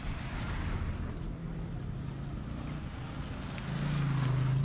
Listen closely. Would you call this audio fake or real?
real